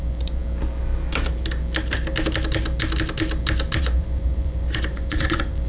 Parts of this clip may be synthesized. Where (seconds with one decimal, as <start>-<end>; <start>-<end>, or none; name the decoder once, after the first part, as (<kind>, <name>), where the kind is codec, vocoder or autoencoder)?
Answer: 0.0-0.4 (vocoder, Vocos); 3.8-5.7